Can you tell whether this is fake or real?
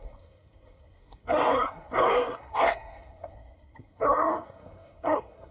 fake